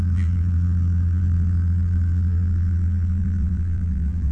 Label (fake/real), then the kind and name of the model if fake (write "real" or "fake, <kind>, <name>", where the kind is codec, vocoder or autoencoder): fake, vocoder, BigVGAN v2